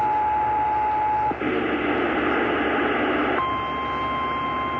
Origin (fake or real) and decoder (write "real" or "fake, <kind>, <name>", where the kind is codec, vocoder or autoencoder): real